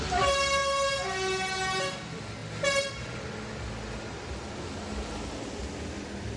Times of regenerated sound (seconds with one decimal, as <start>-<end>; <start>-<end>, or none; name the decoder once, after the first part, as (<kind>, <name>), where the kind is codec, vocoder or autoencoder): none